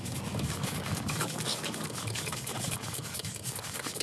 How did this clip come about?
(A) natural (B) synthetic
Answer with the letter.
B